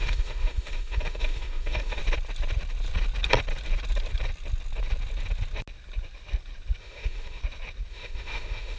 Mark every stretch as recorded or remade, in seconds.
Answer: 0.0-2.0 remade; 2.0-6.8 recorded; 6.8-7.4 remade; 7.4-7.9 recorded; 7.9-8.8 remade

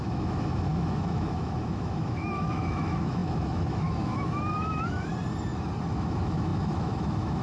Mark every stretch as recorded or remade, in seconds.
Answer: 0.0-5.1 remade; 5.1-5.8 recorded; 5.8-7.4 remade

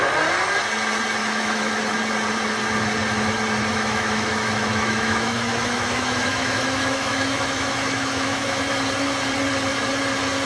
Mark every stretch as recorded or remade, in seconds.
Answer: 0.0-1.2 recorded; 1.2-1.8 remade; 1.8-3.7 recorded; 3.7-8.6 remade; 8.6-10.5 recorded

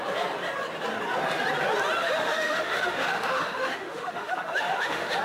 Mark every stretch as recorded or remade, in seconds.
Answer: 0.0-2.0 recorded; 2.0-5.2 remade

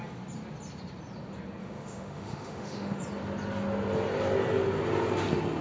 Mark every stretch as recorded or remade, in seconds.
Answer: 0.0-1.6 recorded; 1.6-3.0 remade; 3.0-5.6 recorded

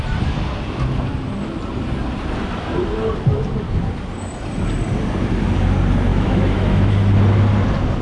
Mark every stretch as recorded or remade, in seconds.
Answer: 0.0-6.1 recorded; 6.1-6.9 remade; 6.9-8.0 recorded

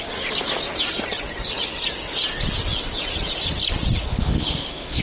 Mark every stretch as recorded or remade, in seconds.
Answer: 0.0-4.1 recorded; 4.1-5.0 remade